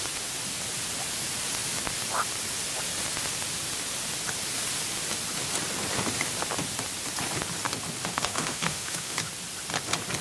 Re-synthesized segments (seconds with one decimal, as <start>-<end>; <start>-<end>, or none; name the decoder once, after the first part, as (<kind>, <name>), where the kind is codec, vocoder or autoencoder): 8.0-9.3 (autoencoder, DAC-VAE)